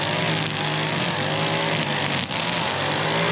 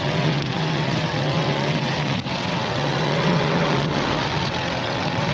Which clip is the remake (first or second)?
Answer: second